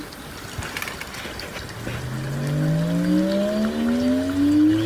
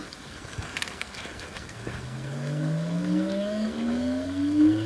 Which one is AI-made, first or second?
second